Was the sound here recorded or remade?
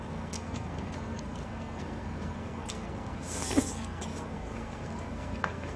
remade